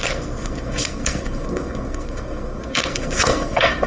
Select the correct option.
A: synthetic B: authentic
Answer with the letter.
A